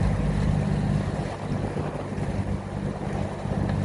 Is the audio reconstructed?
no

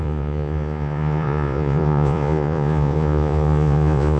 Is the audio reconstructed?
yes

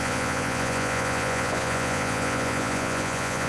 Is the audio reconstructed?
yes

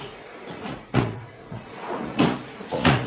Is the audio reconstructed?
yes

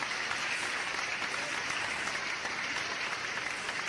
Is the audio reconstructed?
no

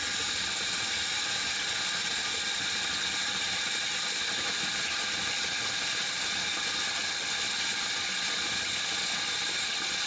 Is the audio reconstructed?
no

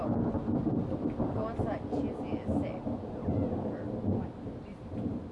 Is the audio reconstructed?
no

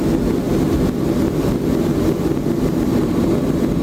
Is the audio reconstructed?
no